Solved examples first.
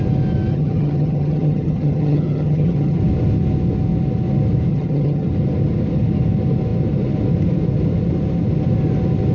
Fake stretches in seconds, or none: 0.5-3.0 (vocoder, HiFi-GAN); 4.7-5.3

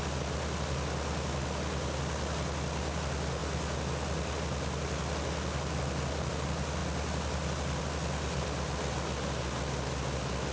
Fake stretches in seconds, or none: none

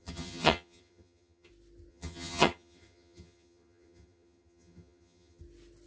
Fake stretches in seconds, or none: 0.0-1.5 (vocoder, HiFi-GAN); 1.9-5.4